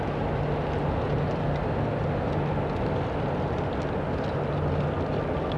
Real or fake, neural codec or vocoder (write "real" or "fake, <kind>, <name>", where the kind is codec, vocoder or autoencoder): real